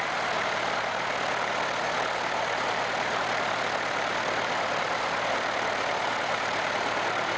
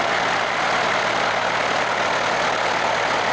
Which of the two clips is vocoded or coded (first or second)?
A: first